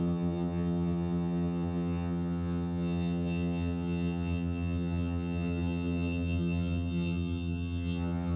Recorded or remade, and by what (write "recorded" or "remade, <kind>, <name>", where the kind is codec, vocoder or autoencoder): remade, vocoder, HiFi-GAN